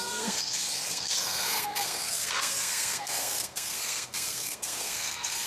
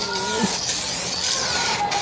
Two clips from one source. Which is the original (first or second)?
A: second